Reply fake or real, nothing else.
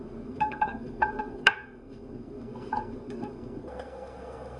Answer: fake